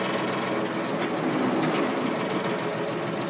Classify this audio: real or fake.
real